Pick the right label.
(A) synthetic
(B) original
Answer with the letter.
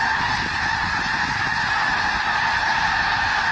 B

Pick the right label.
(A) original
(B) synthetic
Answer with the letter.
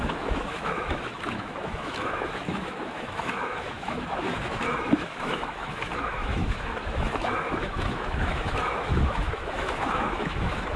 B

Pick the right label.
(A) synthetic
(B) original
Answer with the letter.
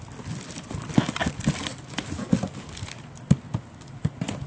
B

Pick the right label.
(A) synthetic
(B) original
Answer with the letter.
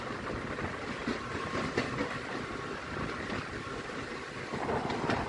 B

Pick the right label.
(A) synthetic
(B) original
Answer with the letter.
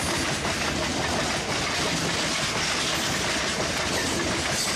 B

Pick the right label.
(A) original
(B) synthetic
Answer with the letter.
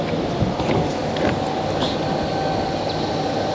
A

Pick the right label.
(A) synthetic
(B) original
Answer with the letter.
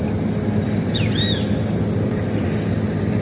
B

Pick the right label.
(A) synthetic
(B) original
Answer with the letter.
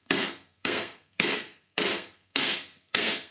A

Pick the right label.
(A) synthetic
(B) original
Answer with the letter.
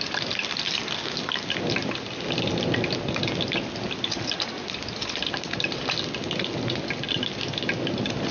B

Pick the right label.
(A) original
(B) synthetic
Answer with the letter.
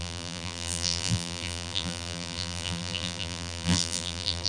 B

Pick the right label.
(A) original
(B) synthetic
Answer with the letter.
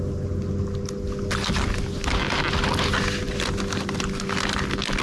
A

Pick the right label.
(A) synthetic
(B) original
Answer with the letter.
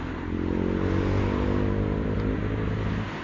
B